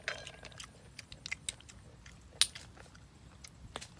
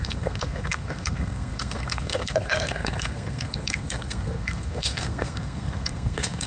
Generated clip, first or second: second